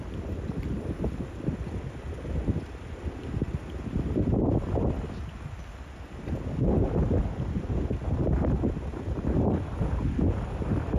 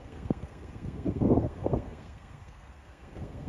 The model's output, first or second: second